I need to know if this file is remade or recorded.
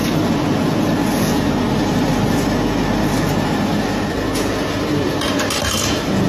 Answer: recorded